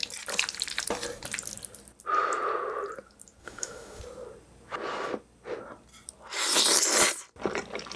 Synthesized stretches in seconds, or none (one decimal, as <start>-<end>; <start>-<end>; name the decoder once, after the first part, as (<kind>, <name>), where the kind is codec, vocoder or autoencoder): 3.4-4.0 (autoencoder, DAC-VAE)